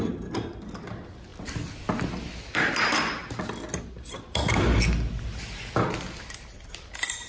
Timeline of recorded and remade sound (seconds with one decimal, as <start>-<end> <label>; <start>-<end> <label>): 0.0-7.3 recorded